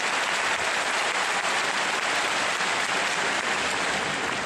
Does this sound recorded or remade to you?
recorded